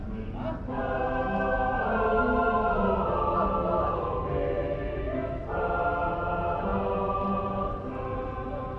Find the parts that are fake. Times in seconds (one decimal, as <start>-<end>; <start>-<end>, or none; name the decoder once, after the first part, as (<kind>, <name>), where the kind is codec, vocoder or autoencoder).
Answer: none